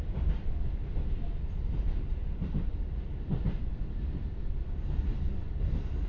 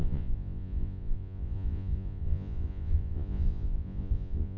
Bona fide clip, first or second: first